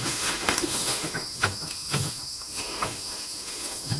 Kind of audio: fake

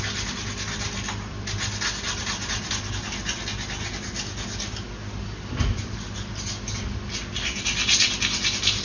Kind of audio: real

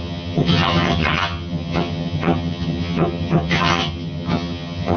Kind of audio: fake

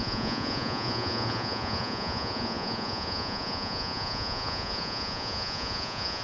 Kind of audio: fake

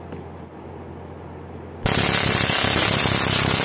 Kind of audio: real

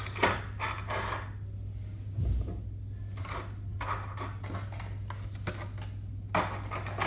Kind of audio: real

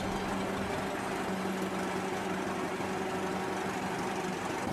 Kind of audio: real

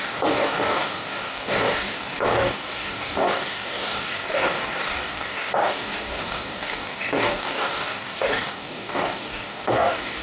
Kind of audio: fake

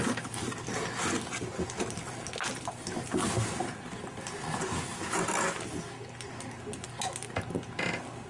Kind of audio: real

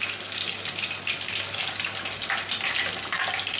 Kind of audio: real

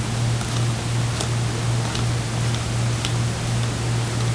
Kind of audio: real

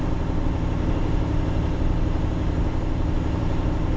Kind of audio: real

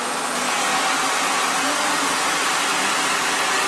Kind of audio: real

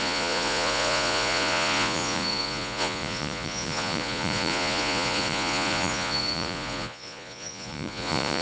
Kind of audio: fake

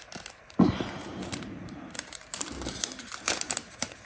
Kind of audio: fake